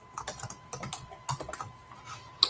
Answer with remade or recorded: recorded